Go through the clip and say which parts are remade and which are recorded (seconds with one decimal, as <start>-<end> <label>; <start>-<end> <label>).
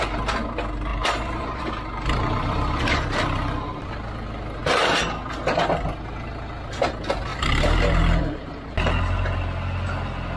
0.0-0.9 recorded; 0.9-4.1 remade; 4.1-4.6 recorded; 4.6-5.8 remade; 5.8-7.3 recorded; 7.3-9.0 remade; 9.0-10.4 recorded